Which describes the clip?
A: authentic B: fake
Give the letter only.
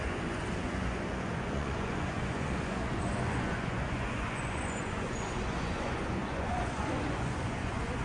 B